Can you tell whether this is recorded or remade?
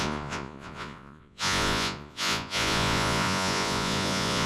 remade